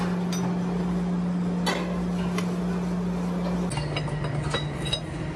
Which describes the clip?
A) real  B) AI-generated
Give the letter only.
A